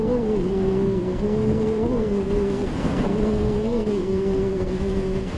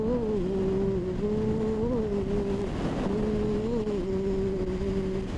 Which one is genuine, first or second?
second